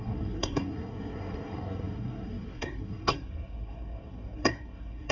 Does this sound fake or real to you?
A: fake